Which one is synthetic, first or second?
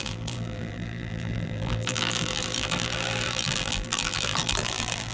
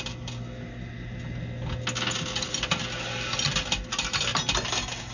first